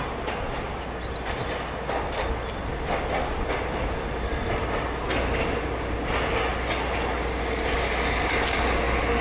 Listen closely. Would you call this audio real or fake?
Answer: real